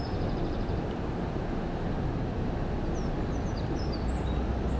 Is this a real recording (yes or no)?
yes